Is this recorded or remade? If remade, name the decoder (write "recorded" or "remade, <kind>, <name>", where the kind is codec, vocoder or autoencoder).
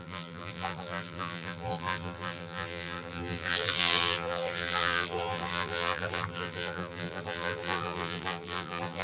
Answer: remade, vocoder, BigVGAN v2